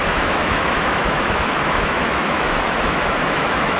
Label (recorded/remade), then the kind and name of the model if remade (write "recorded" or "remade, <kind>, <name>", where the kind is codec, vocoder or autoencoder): remade, autoencoder, DAC-VAE